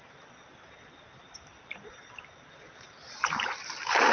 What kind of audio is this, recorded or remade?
recorded